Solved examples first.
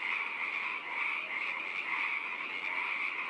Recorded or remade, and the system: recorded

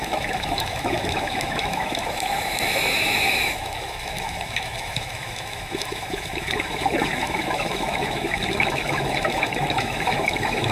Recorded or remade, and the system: remade, autoencoder, DAC-VAE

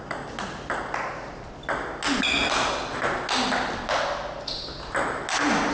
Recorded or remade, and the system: recorded